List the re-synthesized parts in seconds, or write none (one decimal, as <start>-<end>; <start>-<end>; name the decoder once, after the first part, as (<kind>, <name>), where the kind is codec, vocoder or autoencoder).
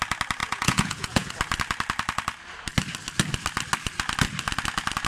0.4-1.3 (vocoder, Vocos)